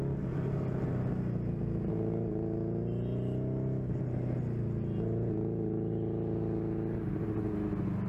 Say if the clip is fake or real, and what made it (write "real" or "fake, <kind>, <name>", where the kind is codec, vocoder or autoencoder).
real